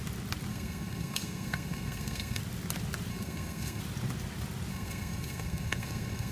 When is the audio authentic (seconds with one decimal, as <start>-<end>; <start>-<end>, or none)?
0.0-0.5; 2.4-3.1; 3.8-4.7